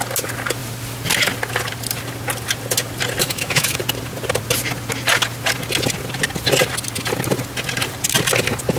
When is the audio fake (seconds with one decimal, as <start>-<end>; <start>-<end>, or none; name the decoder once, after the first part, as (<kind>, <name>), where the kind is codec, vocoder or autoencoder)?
3.2-3.8 (autoencoder, DAC-VAE)